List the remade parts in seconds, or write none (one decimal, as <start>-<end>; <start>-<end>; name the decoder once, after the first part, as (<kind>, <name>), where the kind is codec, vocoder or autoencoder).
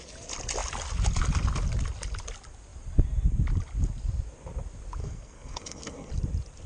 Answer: 5.0-6.1 (codec, SNAC)